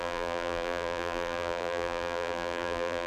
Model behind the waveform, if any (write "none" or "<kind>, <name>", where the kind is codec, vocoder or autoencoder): vocoder, BigVGAN v2